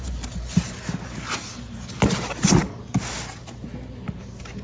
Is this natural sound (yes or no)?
yes